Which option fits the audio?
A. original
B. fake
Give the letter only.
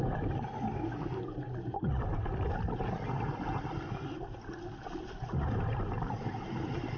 A